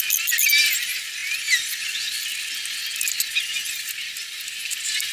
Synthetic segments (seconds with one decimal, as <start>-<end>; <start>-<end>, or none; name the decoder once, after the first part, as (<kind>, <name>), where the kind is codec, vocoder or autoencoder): none